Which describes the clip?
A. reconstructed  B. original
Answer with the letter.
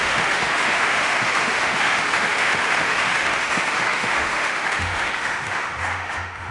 A